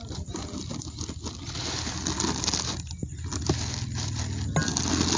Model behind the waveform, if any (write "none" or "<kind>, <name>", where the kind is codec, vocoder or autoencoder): none